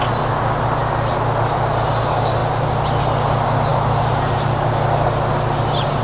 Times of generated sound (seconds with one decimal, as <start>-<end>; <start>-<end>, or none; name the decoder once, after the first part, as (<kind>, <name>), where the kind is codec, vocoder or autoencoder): 3.7-4.7 (vocoder, BigVGAN v2)